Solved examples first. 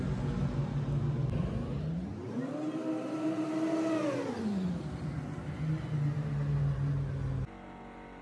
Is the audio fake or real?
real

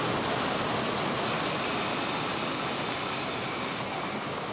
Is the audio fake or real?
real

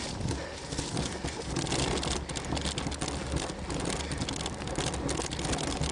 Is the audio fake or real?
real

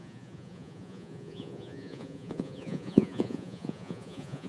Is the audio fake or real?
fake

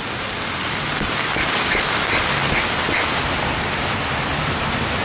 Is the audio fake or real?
real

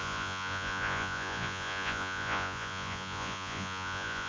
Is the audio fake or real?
fake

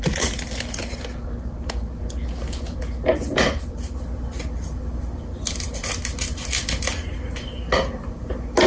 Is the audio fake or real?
real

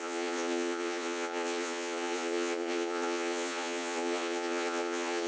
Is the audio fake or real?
fake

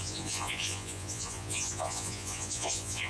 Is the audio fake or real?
fake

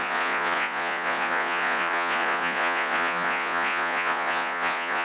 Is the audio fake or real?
fake